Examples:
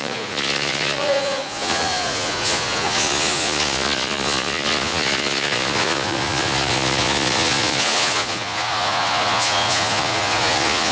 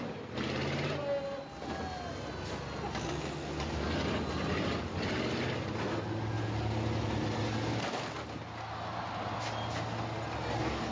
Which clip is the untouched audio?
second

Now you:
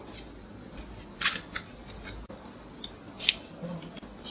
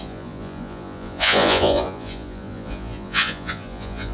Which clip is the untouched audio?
first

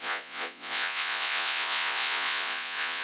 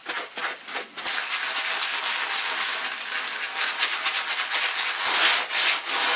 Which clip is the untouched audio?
second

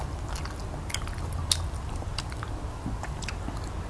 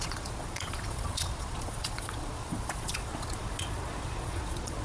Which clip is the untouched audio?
first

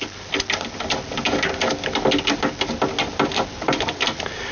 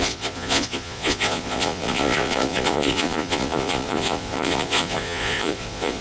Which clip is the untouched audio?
first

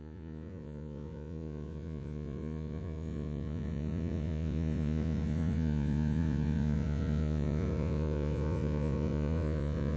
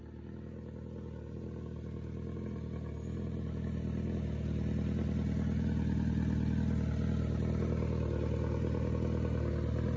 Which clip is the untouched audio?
second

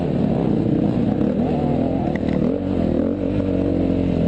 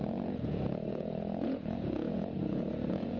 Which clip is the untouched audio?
first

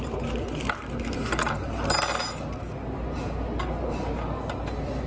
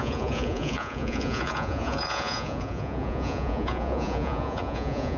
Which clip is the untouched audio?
first